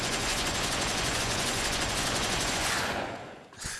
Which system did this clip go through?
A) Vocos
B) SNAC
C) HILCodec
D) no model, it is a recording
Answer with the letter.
A